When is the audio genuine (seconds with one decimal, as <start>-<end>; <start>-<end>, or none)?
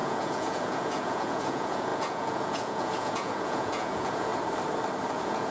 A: 4.3-5.1